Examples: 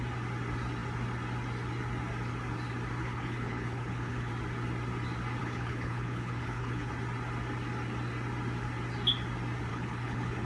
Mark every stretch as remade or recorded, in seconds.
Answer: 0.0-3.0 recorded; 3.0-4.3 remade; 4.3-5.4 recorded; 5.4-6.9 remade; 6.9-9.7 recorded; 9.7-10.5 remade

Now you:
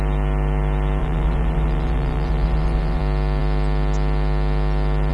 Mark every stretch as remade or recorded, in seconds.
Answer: 0.0-1.0 recorded; 1.0-3.0 remade; 3.0-5.1 recorded